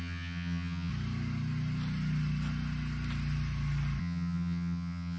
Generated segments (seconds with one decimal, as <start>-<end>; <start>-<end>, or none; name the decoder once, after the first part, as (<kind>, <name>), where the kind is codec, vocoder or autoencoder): 0.0-0.9 (vocoder, HiFi-GAN); 4.0-5.2